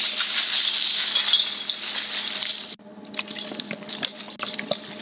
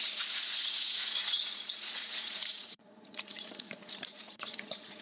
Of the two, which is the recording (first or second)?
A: first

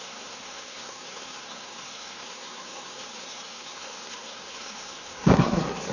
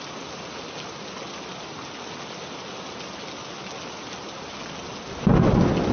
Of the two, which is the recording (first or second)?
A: second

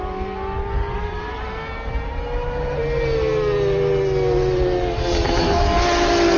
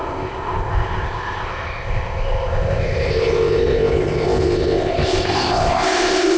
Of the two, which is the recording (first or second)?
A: first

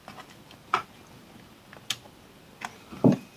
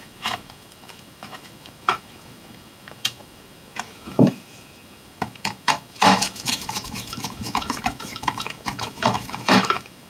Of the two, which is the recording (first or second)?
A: first